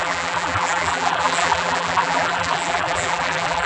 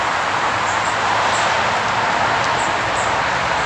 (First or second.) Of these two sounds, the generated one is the first